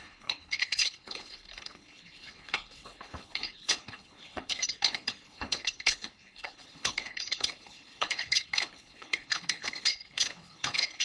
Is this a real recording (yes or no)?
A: no